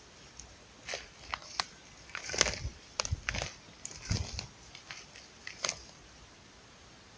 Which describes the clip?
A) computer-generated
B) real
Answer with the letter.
B